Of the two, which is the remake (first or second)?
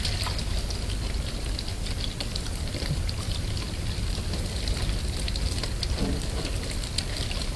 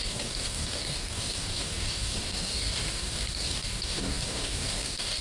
second